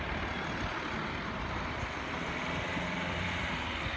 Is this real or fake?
fake